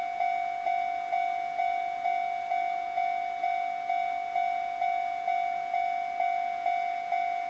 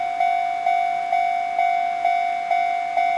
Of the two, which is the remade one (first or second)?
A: first